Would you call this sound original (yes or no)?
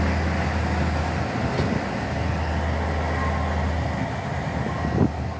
yes